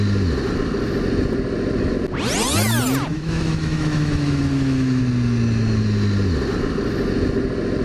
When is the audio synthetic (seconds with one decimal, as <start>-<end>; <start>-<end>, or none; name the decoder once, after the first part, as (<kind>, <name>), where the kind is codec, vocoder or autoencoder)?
3.1-5.0 (autoencoder, DAC-VAE)